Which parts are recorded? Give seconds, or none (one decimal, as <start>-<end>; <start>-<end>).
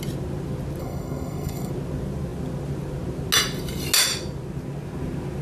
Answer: 0.0-0.8; 1.7-5.4